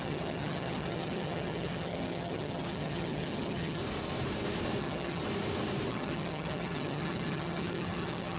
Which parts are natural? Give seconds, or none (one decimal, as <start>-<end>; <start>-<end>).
3.8-4.8; 5.2-5.9